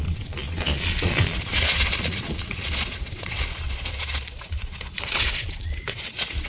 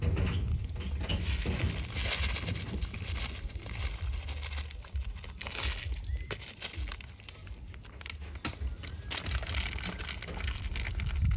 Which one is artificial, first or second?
first